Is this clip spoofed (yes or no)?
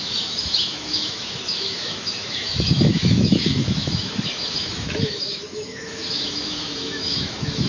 yes